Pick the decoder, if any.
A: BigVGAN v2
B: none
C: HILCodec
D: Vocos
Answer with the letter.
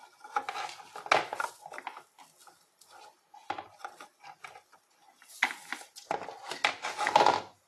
B